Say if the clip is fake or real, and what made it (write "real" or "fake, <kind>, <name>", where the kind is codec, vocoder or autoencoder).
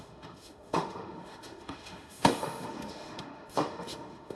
fake, autoencoder, DAC-VAE